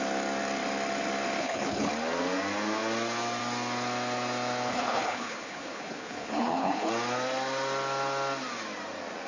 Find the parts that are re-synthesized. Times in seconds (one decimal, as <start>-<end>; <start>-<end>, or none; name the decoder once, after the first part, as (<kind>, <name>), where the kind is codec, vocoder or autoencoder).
1.4-1.9 (codec, HILCodec); 4.7-6.9